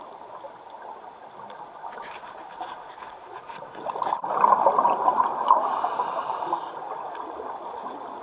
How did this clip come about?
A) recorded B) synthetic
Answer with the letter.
A